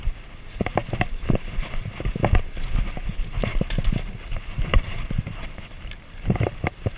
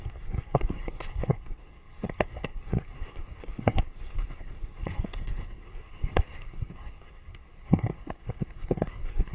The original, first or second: first